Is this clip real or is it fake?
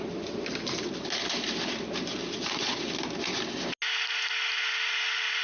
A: real